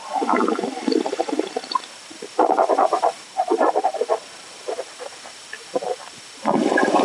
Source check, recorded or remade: recorded